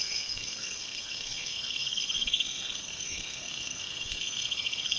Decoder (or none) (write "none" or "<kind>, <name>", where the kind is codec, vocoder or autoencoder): codec, SNAC